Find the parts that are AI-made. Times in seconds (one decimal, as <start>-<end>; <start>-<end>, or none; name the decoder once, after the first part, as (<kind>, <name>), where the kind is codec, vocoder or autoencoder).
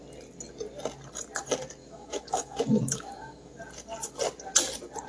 1.8-3.6 (autoencoder, DAC-VAE)